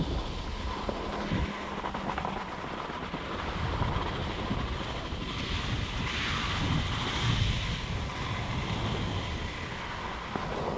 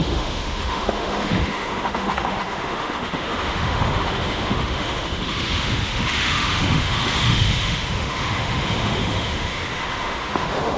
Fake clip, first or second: second